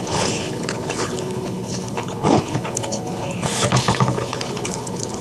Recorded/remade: remade